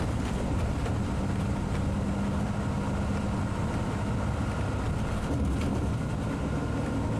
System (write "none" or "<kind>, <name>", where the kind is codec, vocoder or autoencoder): none